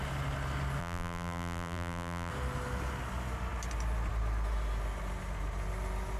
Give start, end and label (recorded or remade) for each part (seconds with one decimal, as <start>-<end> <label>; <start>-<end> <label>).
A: 0.0-0.8 recorded; 0.8-2.3 remade; 2.3-6.2 recorded